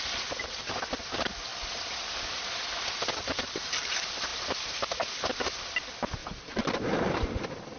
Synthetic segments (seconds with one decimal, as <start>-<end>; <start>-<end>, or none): 3.3-3.9; 6.2-7.3